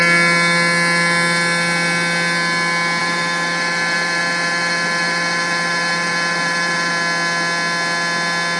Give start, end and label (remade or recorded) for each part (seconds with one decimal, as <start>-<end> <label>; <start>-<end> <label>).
0.0-3.0 recorded; 3.0-6.9 remade; 6.9-8.6 recorded